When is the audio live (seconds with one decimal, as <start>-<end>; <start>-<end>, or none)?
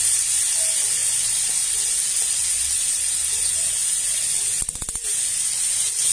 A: 0.0-3.3; 4.1-6.1